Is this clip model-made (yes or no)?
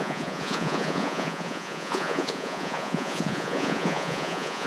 yes